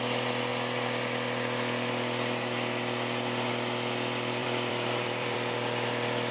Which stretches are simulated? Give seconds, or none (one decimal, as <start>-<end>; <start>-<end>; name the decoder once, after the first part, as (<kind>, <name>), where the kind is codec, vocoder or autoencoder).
4.4-6.3 (vocoder, BigVGAN v2)